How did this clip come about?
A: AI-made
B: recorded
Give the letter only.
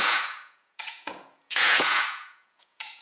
A